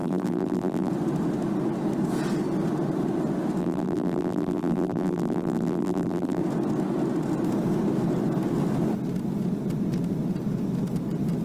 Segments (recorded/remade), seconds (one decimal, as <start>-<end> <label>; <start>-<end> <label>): 0.0-0.9 remade; 0.9-3.6 recorded; 3.6-6.4 remade; 6.4-11.4 recorded